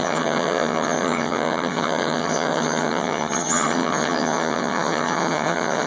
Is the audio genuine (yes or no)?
no